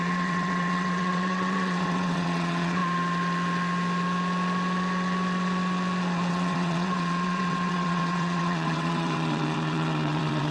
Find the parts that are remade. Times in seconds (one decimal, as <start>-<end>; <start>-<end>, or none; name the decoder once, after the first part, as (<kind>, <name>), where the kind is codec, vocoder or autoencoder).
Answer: 0.0-2.8 (vocoder, WaveNeXt); 6.3-10.5